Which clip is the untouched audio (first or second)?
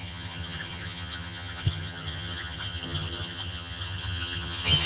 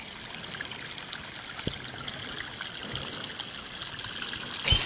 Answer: second